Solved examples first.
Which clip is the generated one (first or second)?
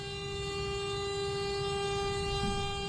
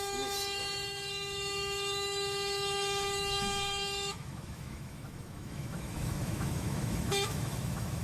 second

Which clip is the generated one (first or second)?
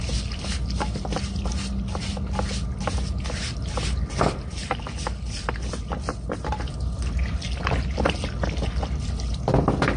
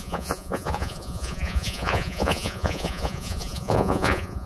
second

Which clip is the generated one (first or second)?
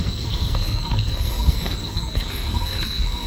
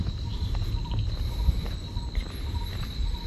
first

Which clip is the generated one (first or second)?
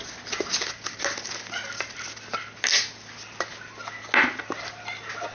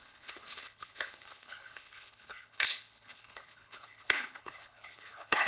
second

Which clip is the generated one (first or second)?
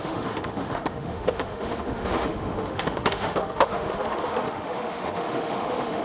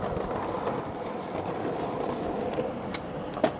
first